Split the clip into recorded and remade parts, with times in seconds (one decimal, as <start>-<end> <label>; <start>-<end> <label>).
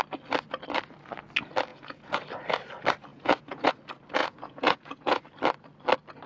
0.0-1.7 recorded; 1.7-2.2 remade; 2.2-3.1 recorded; 3.1-3.7 remade; 3.7-4.2 recorded; 4.2-5.2 remade; 5.2-6.3 recorded